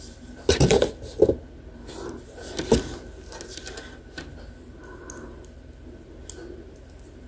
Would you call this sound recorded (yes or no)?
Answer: yes